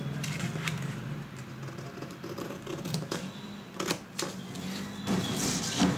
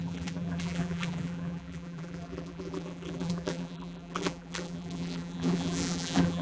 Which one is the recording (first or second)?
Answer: first